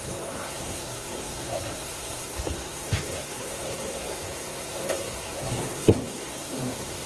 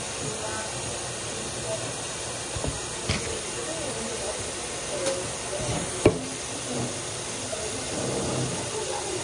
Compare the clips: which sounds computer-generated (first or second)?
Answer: first